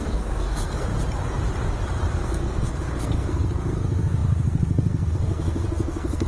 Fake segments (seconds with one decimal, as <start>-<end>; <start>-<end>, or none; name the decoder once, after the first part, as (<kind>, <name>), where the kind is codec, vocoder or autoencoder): 0.0-0.9 (codec, SNAC); 2.1-6.3